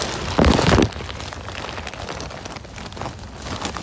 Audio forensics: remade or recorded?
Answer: recorded